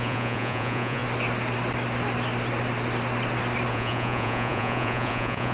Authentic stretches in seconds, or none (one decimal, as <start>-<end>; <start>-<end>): 1.0-3.7